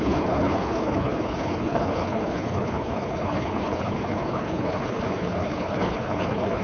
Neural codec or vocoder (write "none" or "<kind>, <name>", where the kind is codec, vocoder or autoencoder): codec, HILCodec